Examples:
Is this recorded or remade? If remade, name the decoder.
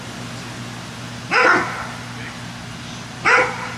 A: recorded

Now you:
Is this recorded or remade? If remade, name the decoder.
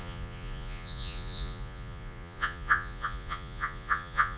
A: remade, vocoder, Vocos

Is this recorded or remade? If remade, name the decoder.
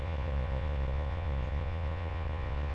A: remade, vocoder, Vocos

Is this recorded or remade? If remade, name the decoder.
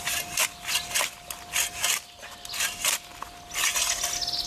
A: recorded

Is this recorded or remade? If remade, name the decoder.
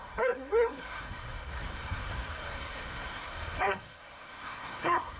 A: remade, codec, SNAC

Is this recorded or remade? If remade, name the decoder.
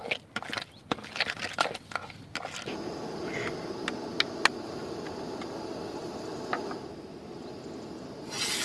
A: recorded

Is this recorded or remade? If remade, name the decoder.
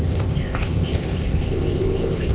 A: remade, codec, ZipCodec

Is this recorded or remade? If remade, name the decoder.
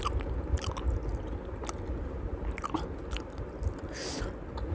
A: recorded